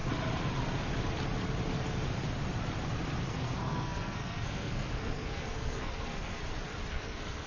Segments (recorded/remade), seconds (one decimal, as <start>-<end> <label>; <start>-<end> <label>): 0.0-3.3 recorded; 3.3-6.4 remade; 6.4-6.9 recorded; 6.9-7.5 remade